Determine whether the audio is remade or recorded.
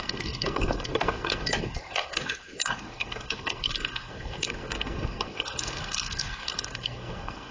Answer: remade